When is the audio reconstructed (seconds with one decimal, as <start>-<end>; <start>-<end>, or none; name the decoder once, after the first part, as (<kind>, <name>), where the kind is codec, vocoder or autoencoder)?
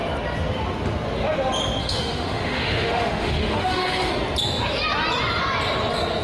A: 1.8-4.1 (autoencoder, DAC-VAE)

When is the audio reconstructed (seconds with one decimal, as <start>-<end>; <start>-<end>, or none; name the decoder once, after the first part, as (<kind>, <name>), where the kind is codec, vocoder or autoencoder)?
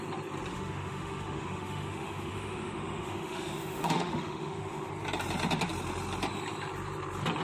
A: 0.5-4.9 (autoencoder, DAC-VAE)